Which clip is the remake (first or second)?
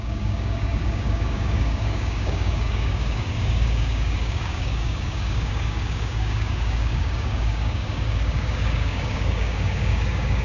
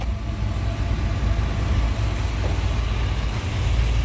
first